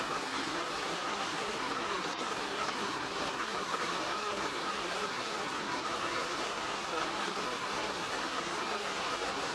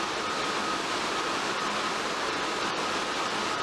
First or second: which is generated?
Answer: first